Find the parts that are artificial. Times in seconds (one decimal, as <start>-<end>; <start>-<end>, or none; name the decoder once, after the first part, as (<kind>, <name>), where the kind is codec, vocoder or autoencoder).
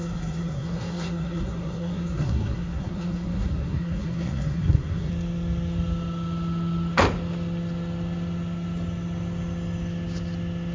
0.0-5.1 (codec, SNAC)